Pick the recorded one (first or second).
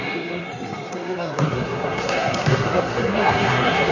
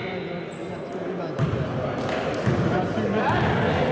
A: second